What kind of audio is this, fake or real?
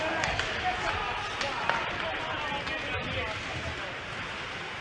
real